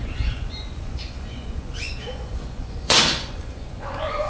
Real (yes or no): no